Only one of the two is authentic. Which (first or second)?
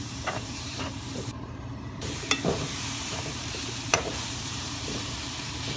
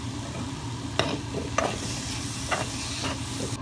second